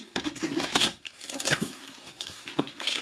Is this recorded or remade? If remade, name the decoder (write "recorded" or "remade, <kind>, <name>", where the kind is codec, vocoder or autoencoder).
remade, codec, SNAC